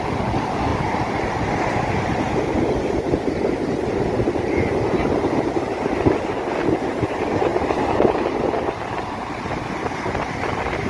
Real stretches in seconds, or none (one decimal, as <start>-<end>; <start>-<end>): 0.0-10.9